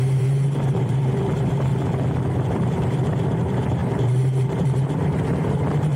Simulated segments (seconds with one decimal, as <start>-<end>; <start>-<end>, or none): 0.0-1.7; 2.5-6.0